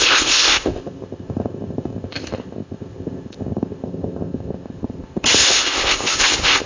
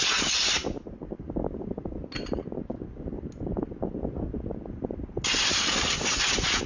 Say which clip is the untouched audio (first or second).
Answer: second